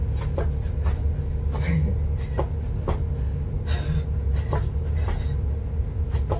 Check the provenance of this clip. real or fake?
real